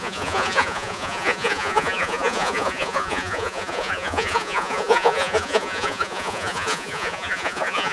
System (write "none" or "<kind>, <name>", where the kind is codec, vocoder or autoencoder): vocoder, Vocos